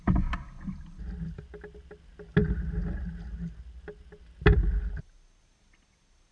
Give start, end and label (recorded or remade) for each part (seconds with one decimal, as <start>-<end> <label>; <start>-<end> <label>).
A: 0.0-6.3 recorded